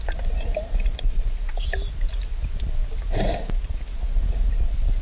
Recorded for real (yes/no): yes